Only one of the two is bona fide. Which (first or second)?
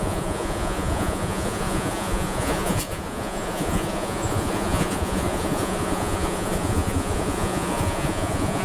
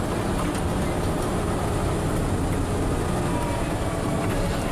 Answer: second